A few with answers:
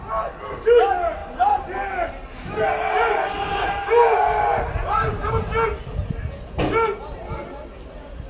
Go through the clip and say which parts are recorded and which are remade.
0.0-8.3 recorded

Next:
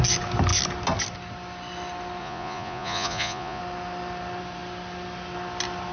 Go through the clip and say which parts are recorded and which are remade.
0.0-2.2 recorded; 2.2-3.6 remade; 3.6-5.9 recorded

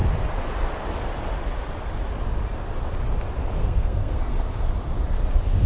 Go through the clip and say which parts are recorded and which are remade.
0.0-3.6 recorded; 3.6-4.7 remade; 4.7-5.7 recorded

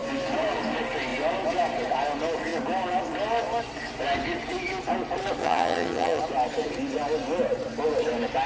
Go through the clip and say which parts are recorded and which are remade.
0.0-5.4 recorded; 5.4-6.2 remade; 6.2-8.5 recorded

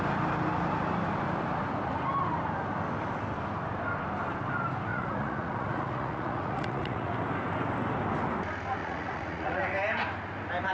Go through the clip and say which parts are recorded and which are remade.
0.0-4.9 recorded; 4.9-7.1 remade; 7.1-8.8 recorded; 8.8-9.6 remade; 9.6-10.7 recorded

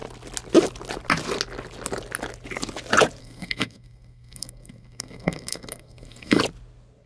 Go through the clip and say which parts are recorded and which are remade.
0.0-3.2 recorded; 3.2-6.4 remade; 6.4-7.1 recorded

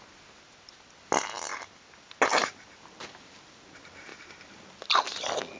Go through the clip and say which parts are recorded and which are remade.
0.0-5.6 recorded